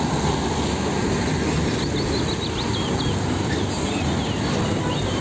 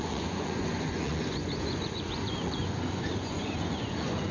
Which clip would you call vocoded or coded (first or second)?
second